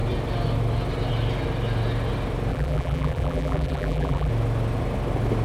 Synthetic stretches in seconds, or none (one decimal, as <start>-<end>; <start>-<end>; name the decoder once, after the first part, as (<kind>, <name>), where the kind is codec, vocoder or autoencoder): 2.5-4.3 (vocoder, BigVGAN v2)